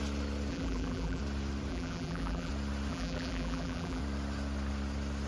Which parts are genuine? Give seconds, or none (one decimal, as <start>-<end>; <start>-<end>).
0.0-0.5; 1.2-1.7; 2.5-2.9; 4.0-5.3

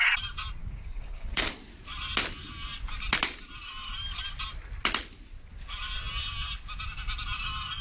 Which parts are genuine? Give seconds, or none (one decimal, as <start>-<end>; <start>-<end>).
0.0-0.6; 1.5-7.8

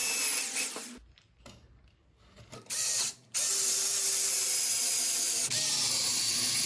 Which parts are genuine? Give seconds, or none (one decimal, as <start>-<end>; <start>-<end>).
0.0-6.7